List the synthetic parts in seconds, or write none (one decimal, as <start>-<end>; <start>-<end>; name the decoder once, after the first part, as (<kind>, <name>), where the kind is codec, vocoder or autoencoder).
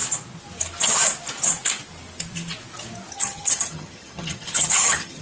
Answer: 3.1-5.2 (vocoder, HiFi-GAN)